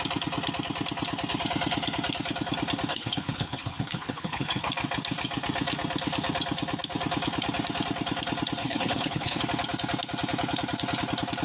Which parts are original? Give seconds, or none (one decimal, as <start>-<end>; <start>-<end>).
0.0-2.9; 4.7-8.6; 9.4-11.4